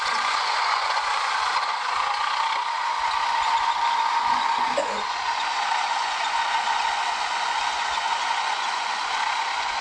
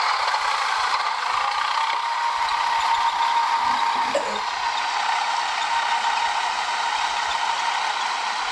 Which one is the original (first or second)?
second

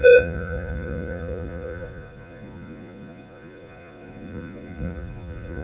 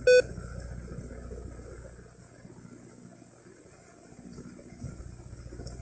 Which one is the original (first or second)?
second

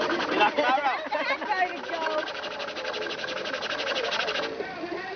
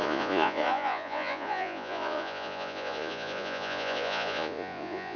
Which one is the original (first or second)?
first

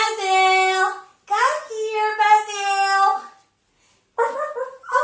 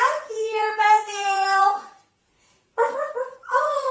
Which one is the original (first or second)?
first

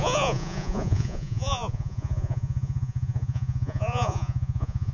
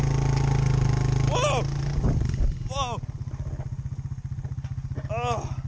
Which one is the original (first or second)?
second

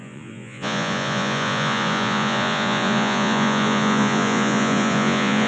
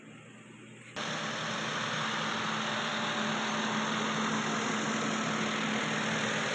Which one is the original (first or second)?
second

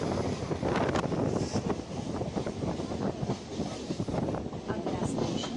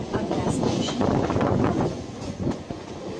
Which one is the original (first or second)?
first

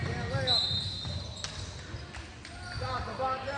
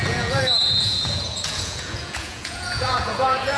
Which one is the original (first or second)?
first